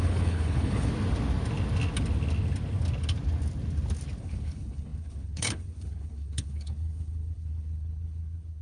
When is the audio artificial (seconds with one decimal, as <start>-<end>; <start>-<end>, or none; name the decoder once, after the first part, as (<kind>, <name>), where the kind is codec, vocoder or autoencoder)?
0.0-0.9 (codec, HILCodec); 4.2-8.6